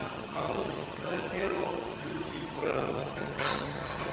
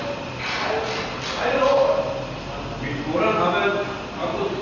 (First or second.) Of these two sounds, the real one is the second